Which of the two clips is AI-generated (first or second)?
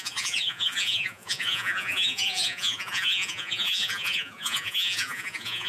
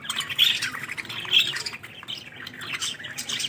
first